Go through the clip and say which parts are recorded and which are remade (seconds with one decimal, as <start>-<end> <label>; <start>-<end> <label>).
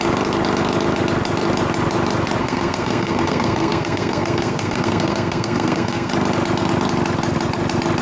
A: 0.0-2.4 recorded; 2.4-6.1 remade; 6.1-8.0 recorded